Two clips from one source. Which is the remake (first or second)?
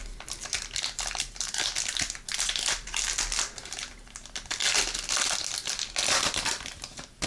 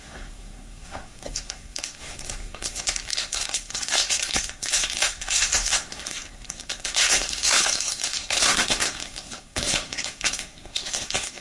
second